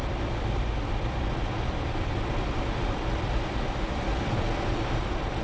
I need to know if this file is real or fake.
fake